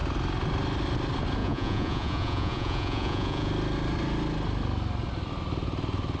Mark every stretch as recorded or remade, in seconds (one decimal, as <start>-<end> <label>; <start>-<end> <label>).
0.0-1.4 recorded; 1.4-3.5 remade; 3.5-6.2 recorded